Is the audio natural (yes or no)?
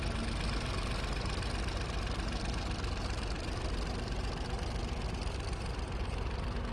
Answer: yes